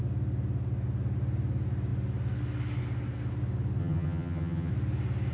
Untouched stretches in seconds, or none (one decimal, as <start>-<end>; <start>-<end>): 0.0-3.8; 4.7-5.3

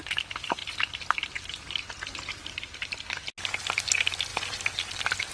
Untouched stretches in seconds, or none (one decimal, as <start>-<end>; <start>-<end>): 0.0-5.3

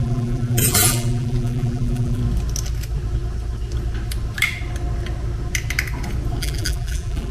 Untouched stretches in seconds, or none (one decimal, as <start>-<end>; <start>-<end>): 2.2-6.4